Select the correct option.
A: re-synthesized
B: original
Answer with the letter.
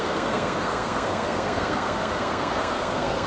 A